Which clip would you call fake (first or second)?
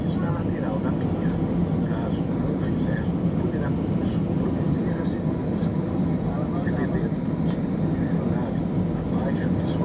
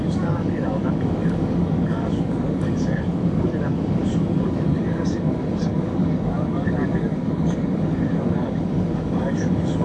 second